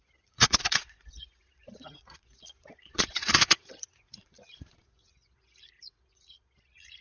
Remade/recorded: remade